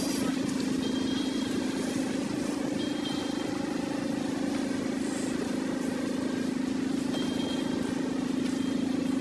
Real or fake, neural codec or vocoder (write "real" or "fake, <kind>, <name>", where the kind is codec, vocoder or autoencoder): real